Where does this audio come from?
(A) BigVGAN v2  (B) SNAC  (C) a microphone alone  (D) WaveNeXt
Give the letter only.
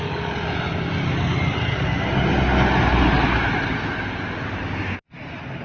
C